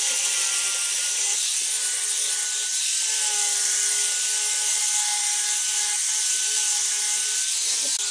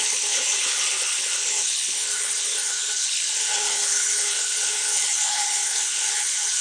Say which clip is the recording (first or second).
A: first